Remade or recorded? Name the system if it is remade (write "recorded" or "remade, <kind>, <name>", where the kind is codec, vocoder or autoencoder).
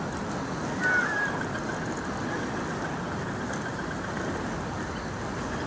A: recorded